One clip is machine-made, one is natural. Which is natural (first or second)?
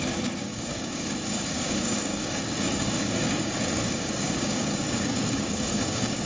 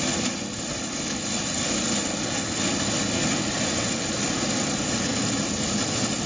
second